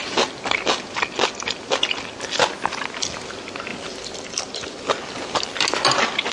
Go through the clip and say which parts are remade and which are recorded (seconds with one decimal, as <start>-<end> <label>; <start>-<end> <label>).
0.0-0.8 remade; 0.8-3.7 recorded; 3.7-4.4 remade; 4.4-6.3 recorded